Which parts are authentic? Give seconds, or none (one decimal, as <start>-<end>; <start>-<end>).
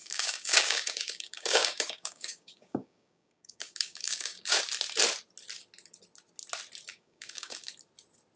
4.6-6.9; 7.7-8.4